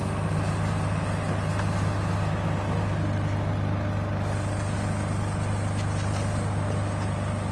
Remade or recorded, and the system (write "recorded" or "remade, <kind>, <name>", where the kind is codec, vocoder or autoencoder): recorded